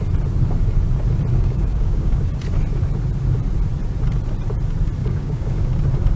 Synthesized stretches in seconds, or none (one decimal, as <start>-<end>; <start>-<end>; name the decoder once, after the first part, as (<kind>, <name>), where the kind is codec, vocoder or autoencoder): 1.3-2.2 (codec, DAC); 5.0-5.7